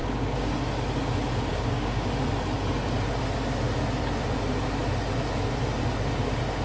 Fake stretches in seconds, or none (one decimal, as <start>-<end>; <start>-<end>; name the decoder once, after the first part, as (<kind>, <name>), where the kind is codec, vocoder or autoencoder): 0.0-0.5 (codec, DAC); 1.5-2.1